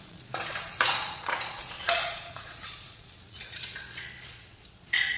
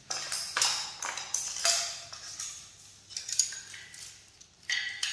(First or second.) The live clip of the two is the second